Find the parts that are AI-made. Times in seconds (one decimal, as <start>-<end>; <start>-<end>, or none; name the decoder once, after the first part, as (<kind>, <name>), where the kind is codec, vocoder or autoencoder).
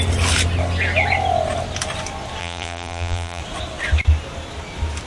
2.4-3.4 (vocoder, BigVGAN v2)